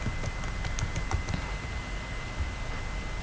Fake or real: real